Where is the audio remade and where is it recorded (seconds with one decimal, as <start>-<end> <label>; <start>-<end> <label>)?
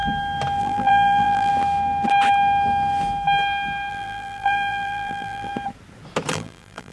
0.0-0.6 recorded; 0.6-1.5 remade; 1.5-3.9 recorded; 3.9-5.5 remade; 5.5-6.3 recorded; 6.3-6.9 remade